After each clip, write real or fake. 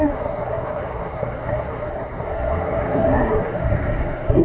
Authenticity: fake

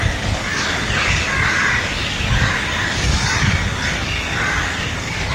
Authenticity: fake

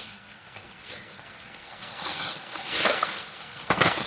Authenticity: fake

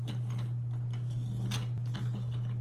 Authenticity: real